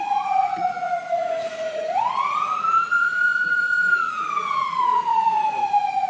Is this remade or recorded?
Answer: remade